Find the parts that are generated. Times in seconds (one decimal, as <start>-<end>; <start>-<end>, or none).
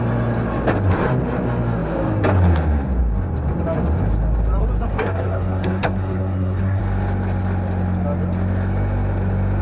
4.9-6.8